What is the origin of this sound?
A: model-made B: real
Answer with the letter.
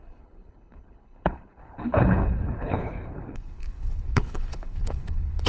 A